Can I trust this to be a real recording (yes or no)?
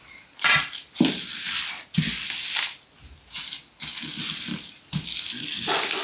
yes